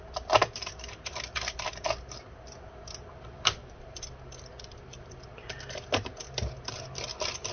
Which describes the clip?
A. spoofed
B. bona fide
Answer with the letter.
A